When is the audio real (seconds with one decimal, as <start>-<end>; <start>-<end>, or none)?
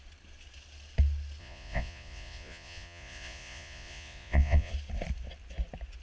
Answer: 0.0-1.4; 4.7-6.0